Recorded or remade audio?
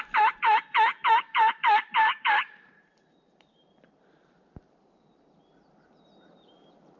remade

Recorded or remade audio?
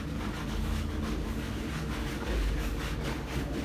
remade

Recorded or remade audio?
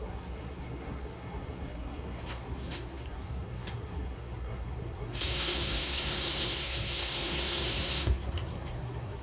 remade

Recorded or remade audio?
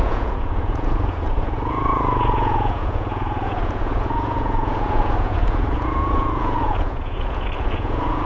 remade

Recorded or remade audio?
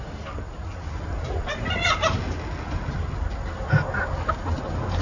recorded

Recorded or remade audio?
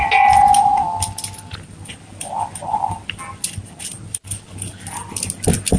recorded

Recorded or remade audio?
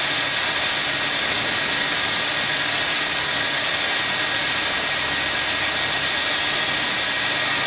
recorded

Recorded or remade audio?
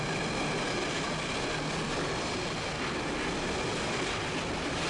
recorded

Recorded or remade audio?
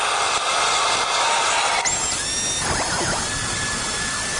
recorded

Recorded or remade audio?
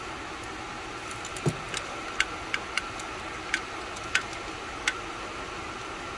recorded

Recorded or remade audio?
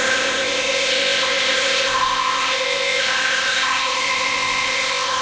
remade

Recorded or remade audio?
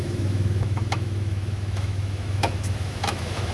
remade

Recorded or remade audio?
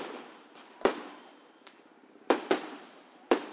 remade